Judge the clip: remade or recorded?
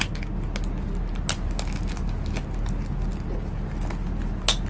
recorded